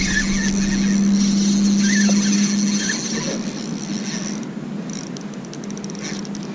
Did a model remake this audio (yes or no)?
no